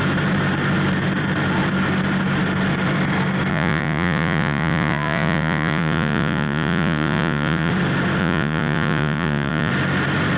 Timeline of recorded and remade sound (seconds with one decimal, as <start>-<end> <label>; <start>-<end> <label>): 0.0-3.5 recorded; 3.5-7.7 remade; 7.7-8.2 recorded; 8.2-9.7 remade; 9.7-10.4 recorded